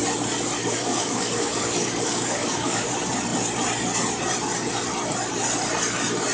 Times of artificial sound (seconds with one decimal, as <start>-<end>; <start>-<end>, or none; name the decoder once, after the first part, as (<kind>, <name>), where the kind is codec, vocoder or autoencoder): 0.6-2.9 (codec, DAC)